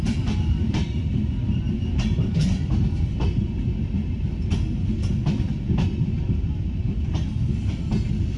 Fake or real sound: real